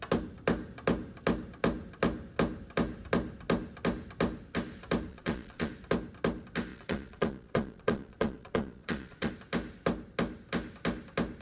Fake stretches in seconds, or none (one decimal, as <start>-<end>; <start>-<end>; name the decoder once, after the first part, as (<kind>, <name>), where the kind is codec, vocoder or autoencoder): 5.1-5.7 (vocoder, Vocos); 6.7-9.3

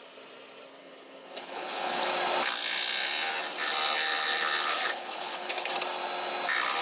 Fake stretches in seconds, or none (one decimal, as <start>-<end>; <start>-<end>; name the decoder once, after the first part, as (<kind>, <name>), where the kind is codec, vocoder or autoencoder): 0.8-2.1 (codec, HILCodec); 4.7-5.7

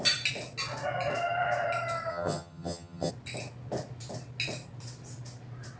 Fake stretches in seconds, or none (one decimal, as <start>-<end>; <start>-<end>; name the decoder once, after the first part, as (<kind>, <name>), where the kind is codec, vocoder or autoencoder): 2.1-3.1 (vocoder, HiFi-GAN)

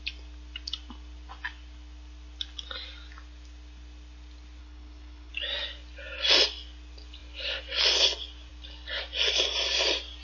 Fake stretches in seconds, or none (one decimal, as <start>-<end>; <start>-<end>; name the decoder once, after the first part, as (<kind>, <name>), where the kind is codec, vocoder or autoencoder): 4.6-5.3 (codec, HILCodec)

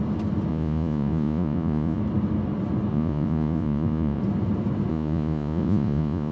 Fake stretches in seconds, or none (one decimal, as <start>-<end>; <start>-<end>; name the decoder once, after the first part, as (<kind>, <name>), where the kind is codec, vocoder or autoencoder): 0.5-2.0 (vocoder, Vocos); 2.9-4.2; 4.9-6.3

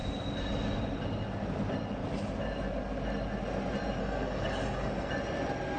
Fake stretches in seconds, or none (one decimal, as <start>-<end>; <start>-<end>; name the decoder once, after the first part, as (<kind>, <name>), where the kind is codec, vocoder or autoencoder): 4.0-5.1 (codec, SNAC)